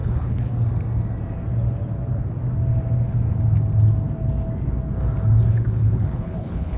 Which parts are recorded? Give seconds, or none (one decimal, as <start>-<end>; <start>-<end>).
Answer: 0.5-5.5